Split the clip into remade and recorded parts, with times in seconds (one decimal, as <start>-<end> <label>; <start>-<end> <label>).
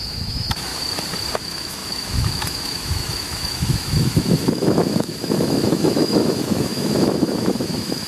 0.0-0.7 remade; 0.7-1.4 recorded; 1.4-8.1 remade